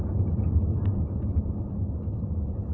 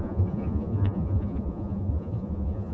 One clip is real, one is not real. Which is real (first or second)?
first